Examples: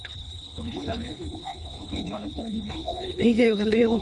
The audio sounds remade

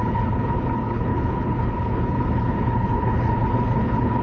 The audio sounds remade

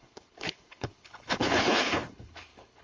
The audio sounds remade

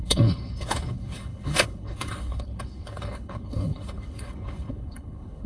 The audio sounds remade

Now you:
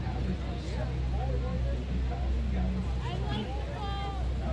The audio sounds recorded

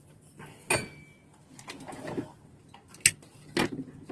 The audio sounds recorded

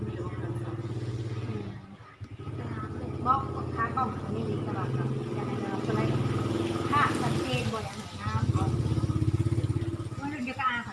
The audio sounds recorded